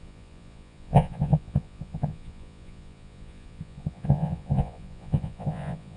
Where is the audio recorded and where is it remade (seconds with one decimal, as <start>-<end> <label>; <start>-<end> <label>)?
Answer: 0.0-6.0 remade

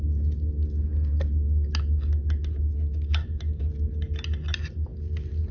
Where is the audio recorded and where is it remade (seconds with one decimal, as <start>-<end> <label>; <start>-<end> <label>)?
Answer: 0.0-5.5 recorded

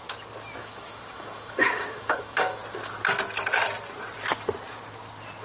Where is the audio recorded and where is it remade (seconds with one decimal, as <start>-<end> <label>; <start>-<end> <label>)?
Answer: 0.0-0.6 recorded; 0.6-2.6 remade; 2.6-5.4 recorded

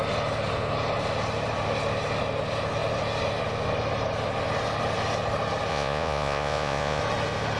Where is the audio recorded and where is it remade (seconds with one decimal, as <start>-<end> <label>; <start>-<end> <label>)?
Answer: 0.0-5.7 recorded; 5.7-7.0 remade; 7.0-7.6 recorded

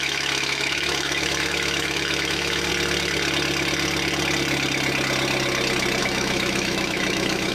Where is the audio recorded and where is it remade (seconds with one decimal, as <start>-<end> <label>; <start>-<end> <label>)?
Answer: 0.0-2.7 remade; 2.7-6.0 recorded; 6.0-7.5 remade

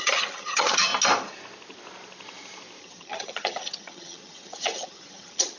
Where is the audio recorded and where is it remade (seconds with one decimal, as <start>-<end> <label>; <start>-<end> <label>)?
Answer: 0.0-0.9 remade; 0.9-2.8 recorded; 2.8-5.6 remade

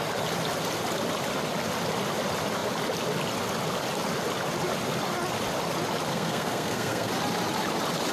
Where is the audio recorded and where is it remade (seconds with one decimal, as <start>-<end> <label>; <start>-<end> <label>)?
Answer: 0.0-6.1 recorded; 6.1-7.1 remade; 7.1-8.1 recorded